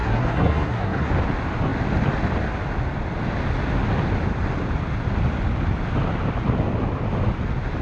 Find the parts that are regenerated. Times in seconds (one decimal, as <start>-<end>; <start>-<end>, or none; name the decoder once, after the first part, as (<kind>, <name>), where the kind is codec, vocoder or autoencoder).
0.0-1.1 (codec, SNAC)

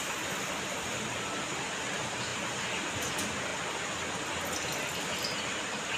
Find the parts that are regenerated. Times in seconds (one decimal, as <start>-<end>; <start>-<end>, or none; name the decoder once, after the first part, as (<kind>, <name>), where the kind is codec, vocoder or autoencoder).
none

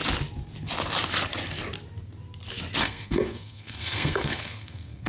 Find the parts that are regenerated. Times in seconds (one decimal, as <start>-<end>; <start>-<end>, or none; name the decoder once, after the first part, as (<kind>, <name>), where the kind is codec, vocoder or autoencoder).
2.8-5.1 (codec, SNAC)

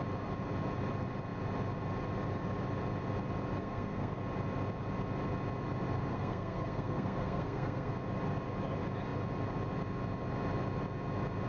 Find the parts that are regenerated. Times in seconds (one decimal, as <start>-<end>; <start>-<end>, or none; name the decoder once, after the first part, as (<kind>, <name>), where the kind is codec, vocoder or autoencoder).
3.6-4.2 (codec, SNAC); 6.1-7.9

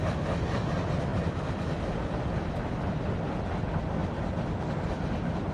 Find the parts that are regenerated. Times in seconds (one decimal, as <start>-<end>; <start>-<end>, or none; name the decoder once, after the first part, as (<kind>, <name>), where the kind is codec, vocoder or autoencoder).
none